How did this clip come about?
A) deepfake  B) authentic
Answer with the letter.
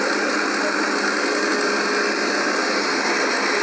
B